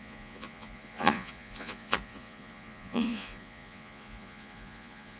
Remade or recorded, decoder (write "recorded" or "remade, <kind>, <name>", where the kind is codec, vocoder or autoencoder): remade, vocoder, Vocos